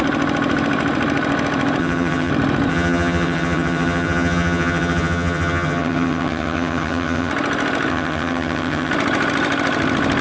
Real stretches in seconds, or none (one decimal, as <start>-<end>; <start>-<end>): 0.0-1.8; 2.3-2.7; 7.3-7.9; 8.9-10.2